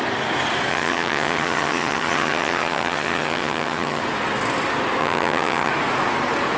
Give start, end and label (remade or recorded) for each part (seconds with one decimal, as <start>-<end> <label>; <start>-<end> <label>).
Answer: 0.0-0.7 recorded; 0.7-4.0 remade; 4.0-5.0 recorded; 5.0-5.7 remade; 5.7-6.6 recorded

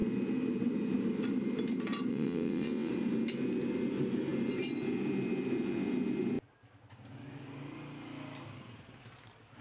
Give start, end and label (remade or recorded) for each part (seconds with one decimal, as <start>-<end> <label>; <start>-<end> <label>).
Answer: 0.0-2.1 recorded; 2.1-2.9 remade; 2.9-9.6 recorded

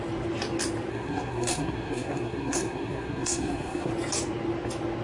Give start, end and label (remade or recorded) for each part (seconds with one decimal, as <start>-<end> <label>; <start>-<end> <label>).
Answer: 0.0-0.9 recorded; 0.9-3.9 remade; 3.9-5.0 recorded